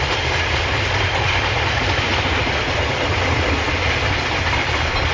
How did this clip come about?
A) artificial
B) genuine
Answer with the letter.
B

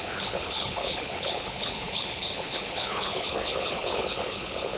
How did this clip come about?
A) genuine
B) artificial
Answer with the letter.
B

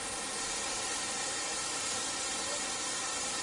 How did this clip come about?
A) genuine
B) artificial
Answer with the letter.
A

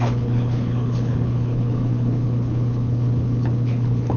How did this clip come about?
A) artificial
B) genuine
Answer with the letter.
A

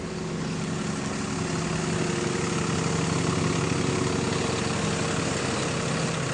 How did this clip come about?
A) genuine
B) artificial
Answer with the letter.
A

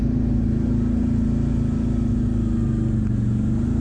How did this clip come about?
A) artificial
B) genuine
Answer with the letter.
B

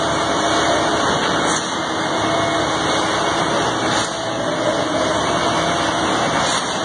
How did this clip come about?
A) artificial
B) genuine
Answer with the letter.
B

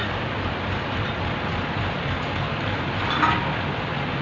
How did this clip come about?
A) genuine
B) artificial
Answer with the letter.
A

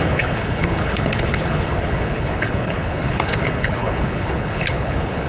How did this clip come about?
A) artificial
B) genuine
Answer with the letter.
A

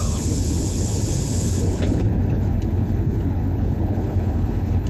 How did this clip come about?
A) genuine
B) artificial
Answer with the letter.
B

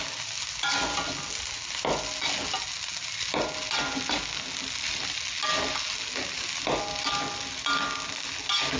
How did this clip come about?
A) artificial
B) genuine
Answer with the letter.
B